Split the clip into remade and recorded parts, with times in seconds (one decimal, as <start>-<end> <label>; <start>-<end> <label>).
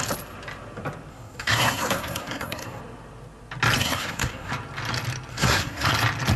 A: 0.0-1.1 recorded; 1.1-2.8 remade; 2.8-3.8 recorded; 3.8-4.5 remade; 4.5-5.3 recorded; 5.3-5.9 remade; 5.9-6.4 recorded